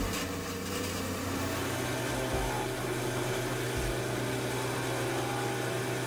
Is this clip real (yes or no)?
yes